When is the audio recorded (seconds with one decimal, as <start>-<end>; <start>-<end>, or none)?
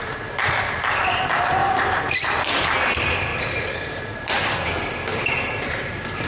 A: 0.0-1.6; 2.4-3.3; 4.3-5.1; 5.8-6.3